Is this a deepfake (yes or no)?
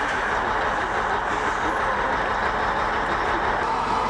no